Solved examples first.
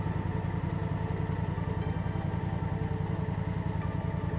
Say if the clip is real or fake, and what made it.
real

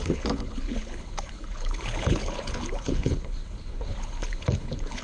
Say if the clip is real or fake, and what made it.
fake, codec, HILCodec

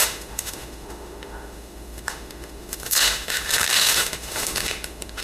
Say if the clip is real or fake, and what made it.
fake, autoencoder, DAC-VAE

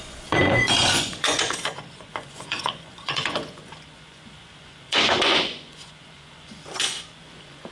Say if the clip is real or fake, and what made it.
fake, vocoder, Vocos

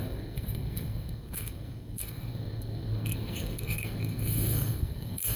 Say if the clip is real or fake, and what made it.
fake, codec, SNAC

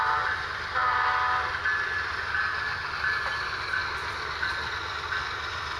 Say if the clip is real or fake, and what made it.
real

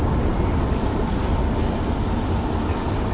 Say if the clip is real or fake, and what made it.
real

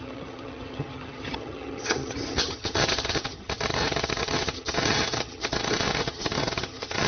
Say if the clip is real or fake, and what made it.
fake, vocoder, HiFi-GAN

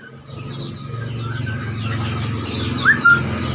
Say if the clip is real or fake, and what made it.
real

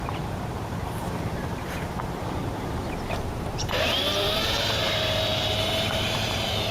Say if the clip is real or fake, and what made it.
fake, vocoder, BigVGAN v2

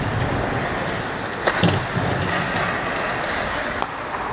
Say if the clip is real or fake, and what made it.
real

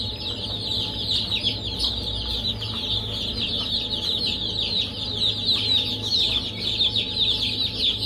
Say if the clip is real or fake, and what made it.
real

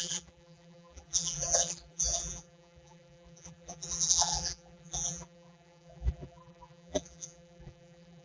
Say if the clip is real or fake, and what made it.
fake, vocoder, BigVGAN v2